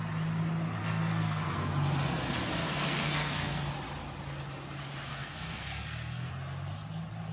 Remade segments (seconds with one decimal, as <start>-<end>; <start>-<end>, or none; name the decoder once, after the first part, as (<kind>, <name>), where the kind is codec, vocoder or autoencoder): 0.8-1.7 (codec, SNAC); 2.6-3.7; 5.1-6.3